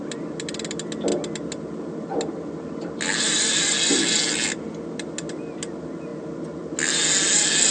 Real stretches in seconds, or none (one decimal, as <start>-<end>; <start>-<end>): 0.0-7.7